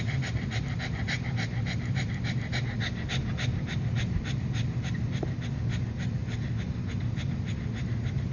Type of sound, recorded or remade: recorded